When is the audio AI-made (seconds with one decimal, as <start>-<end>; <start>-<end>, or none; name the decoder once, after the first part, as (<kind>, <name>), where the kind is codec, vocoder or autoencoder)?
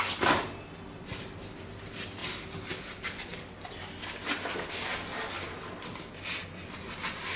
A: none